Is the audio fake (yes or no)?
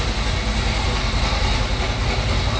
no